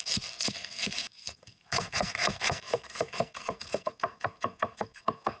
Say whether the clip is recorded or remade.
remade